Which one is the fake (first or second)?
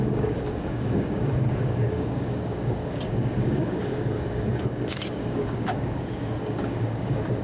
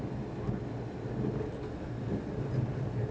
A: first